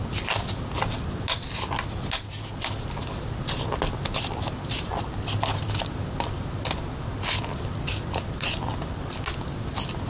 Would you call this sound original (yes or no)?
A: yes